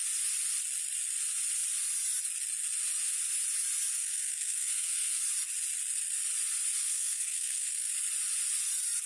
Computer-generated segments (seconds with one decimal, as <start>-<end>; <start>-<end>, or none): 3.9-5.2; 6.8-7.9